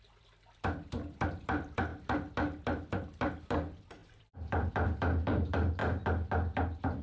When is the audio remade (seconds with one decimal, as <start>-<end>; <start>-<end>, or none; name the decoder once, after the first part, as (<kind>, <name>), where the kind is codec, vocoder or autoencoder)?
0.0-1.9 (vocoder, BigVGAN v2); 2.9-5.8